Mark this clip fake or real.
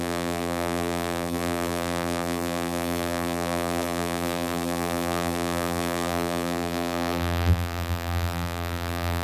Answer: fake